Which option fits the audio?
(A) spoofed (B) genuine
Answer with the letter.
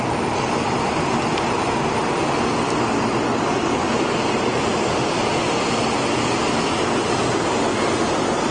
B